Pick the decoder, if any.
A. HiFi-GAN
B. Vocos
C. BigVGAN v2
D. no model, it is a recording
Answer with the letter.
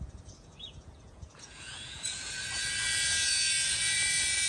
B